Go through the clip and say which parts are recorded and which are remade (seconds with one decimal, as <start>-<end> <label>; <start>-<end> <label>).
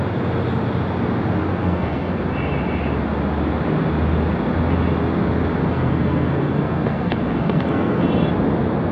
0.0-1.6 recorded; 1.6-2.2 remade; 2.2-5.6 recorded; 5.6-8.0 remade; 8.0-8.9 recorded